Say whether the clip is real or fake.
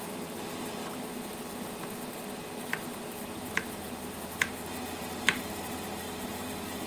fake